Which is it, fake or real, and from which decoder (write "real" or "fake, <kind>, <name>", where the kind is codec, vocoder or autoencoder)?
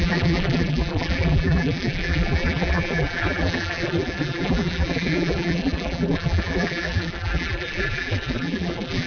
fake, vocoder, BigVGAN v2